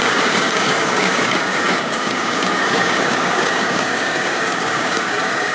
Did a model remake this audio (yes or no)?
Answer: yes